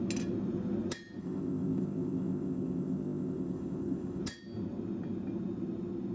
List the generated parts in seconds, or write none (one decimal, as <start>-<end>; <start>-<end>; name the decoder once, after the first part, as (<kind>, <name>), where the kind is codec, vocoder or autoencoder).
1.2-4.2 (codec, ZipCodec)